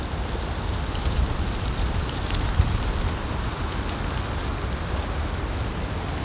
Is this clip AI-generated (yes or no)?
no